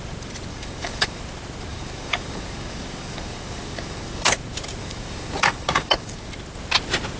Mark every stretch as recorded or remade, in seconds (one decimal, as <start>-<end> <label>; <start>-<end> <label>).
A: 0.0-0.5 recorded; 0.5-1.2 remade; 1.2-1.7 recorded; 1.7-4.3 remade; 4.3-4.8 recorded; 4.8-6.3 remade; 6.3-7.2 recorded